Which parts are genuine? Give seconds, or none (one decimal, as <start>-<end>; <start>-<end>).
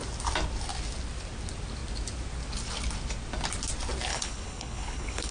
0.0-4.1